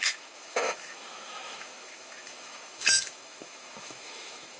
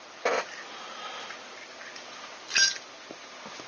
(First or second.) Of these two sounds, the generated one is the first